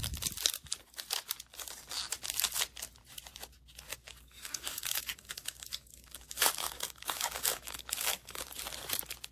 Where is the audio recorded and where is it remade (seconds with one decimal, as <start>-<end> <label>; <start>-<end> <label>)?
0.0-3.9 recorded; 3.9-8.6 remade; 8.6-9.3 recorded